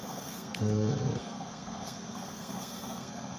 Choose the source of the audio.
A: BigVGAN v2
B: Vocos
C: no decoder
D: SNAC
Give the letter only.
D